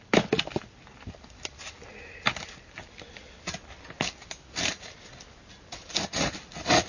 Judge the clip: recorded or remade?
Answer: recorded